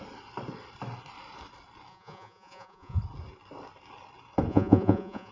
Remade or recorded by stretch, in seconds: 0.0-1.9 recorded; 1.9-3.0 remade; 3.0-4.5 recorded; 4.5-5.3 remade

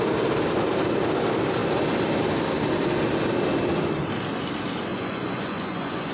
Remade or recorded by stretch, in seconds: 0.0-4.9 recorded; 4.9-6.1 remade

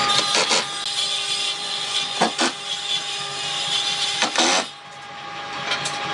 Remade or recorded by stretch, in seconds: 0.0-1.6 recorded; 1.6-2.4 remade; 2.4-6.1 recorded

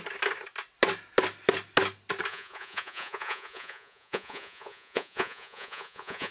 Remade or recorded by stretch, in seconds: 0.0-2.3 recorded; 2.3-6.3 remade

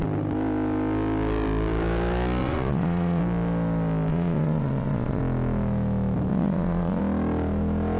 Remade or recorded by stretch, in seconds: 0.0-2.4 recorded; 2.4-3.2 remade; 3.2-4.1 recorded; 4.1-5.2 remade; 5.2-6.3 recorded; 6.3-7.0 remade; 7.0-8.0 recorded

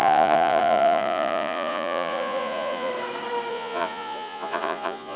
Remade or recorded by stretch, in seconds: 0.0-2.9 remade; 2.9-3.5 recorded; 3.5-5.2 remade